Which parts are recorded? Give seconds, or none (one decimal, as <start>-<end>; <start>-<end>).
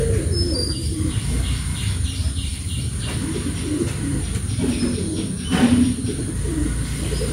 0.0-7.3